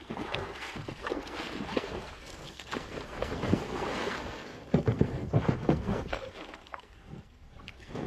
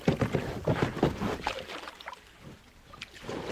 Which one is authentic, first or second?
second